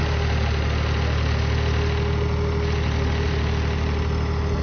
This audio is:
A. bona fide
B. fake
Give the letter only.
A